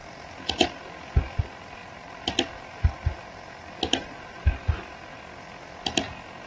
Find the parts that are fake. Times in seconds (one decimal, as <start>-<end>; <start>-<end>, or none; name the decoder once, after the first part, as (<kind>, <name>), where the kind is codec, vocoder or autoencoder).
1.8-5.2 (vocoder, BigVGAN v2)